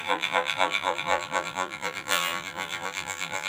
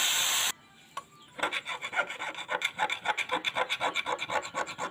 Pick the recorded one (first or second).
second